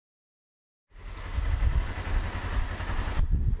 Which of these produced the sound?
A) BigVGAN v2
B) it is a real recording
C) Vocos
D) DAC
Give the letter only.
B